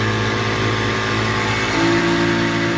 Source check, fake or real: real